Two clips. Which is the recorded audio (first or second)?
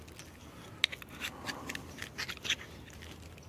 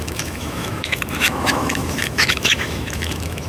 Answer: first